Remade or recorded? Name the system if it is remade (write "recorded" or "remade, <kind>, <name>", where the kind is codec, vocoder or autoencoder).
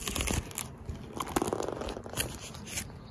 recorded